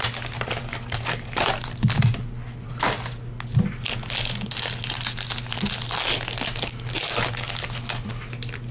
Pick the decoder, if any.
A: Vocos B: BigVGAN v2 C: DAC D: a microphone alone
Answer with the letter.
D